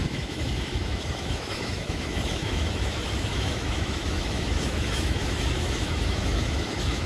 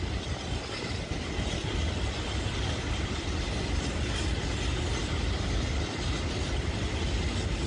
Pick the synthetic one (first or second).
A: first